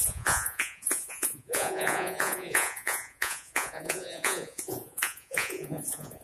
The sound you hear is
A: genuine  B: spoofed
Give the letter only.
B